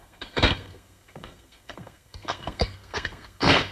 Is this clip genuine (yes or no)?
no